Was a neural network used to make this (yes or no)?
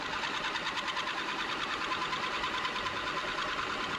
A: no